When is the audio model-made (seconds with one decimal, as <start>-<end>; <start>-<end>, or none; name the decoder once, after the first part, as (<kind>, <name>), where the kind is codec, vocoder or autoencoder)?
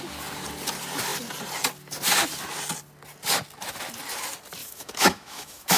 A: 4.6-5.8 (autoencoder, DAC-VAE)